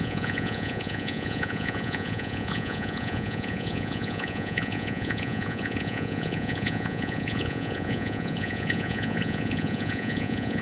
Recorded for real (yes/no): no